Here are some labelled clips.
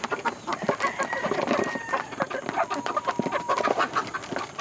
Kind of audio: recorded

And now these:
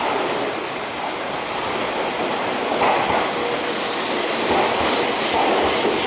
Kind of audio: recorded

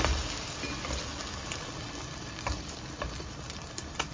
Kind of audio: recorded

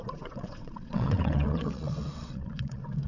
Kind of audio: remade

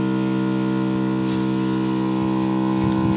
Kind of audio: recorded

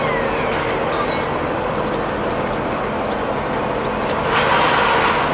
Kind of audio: recorded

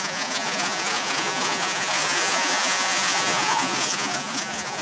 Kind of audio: remade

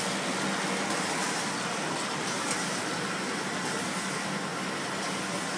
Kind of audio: recorded